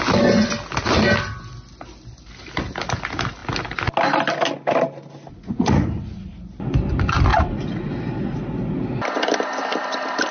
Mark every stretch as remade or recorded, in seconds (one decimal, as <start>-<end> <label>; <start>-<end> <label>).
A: 0.0-5.3 recorded; 5.3-6.3 remade; 6.3-7.3 recorded; 7.3-7.9 remade; 7.9-10.3 recorded